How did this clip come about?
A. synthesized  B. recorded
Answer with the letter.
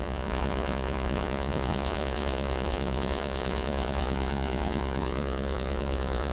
A